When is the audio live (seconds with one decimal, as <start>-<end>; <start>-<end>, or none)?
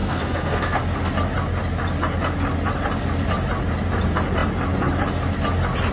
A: 0.8-5.9